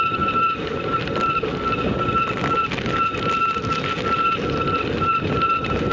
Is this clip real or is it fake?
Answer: real